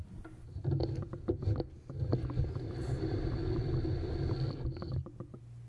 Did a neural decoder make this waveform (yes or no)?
no